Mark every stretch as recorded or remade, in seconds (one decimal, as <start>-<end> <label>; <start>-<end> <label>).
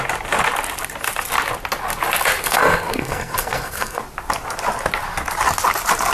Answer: 0.0-2.4 recorded; 2.4-4.0 remade; 4.0-6.1 recorded